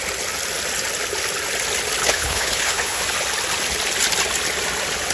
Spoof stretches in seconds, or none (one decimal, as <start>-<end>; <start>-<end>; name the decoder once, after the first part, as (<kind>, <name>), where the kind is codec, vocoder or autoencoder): 2.0-3.0 (codec, HILCodec)